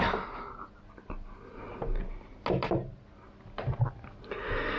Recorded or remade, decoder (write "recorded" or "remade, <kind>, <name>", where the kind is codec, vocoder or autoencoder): recorded